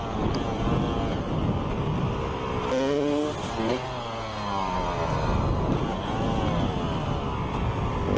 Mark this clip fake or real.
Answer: real